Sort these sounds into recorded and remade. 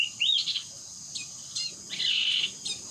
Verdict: recorded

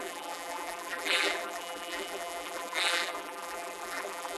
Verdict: remade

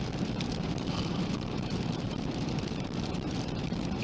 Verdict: remade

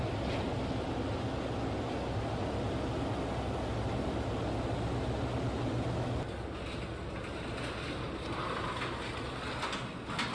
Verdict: recorded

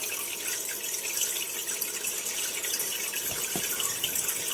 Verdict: recorded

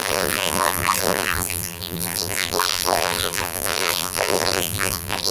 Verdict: remade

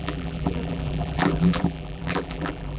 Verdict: remade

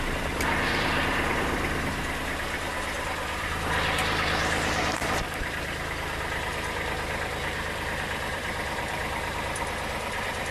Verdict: remade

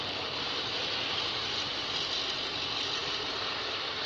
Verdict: recorded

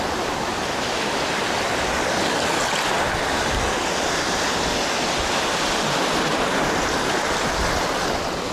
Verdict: recorded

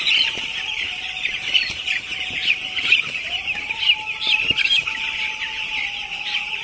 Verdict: remade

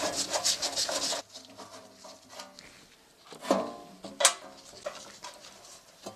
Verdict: recorded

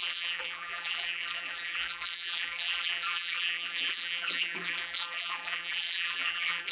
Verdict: remade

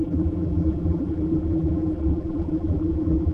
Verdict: remade